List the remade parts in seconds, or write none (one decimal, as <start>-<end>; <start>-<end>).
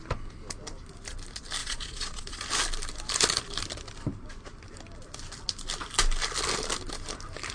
1.6-2.4